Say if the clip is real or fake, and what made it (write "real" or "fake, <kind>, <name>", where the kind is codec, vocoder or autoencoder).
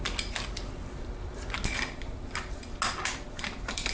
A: real